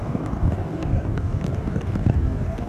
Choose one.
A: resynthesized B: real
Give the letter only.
A